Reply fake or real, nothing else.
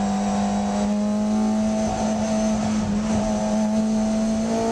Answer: real